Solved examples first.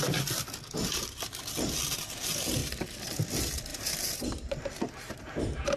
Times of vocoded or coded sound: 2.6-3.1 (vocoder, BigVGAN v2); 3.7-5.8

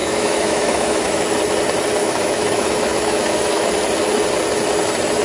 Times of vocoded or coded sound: 0.0-1.2 (autoencoder, DAC-VAE); 2.0-3.7

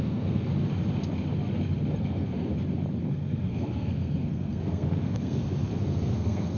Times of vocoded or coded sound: 0.0-0.5 (codec, SNAC); 2.0-2.5; 3.0-6.6

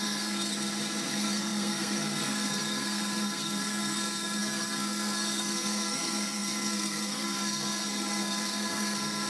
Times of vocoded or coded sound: 0.0-0.5 (codec, SNAC); 1.1-9.3

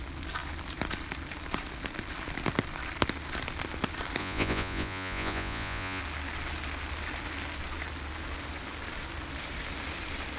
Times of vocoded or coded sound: 4.2-6.0 (vocoder, Vocos)

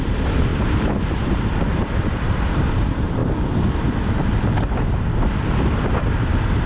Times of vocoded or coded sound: 0.0-3.2 (vocoder, BigVGAN v2); 5.9-6.7